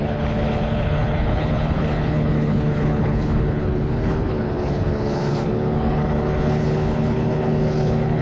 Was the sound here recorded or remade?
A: remade